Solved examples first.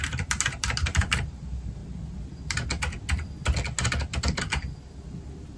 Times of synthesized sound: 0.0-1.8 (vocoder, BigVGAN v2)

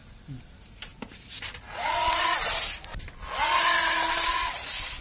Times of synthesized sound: none

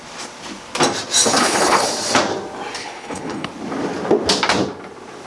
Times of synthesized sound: 1.3-1.9 (codec, HILCodec); 2.8-3.5

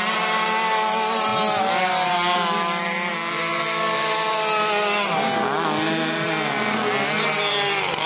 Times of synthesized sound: none

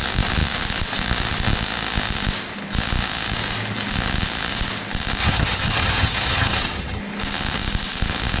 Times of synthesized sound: 5.2-7.0 (vocoder, HiFi-GAN)

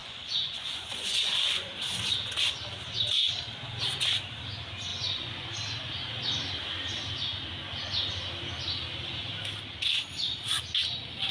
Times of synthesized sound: 0.0-1.7 (vocoder, Vocos); 4.9-5.5

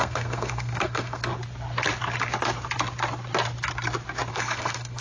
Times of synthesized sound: 0.0-1.3 (codec, SNAC); 4.3-5.0